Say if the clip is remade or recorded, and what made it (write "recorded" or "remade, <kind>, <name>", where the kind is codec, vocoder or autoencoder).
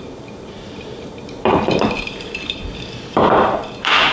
remade, vocoder, BigVGAN v2